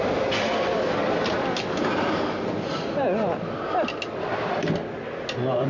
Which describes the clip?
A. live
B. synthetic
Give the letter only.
A